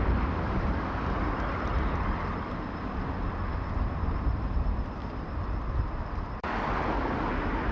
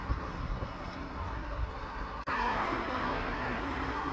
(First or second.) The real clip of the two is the first